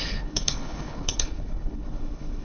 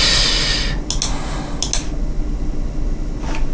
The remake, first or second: first